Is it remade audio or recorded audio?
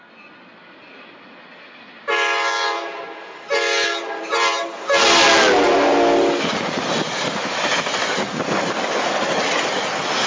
recorded